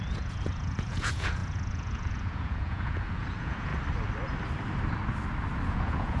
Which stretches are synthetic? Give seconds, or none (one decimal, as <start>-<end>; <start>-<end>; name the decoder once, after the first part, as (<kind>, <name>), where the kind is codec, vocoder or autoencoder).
0.0-3.7 (vocoder, Vocos); 5.7-6.2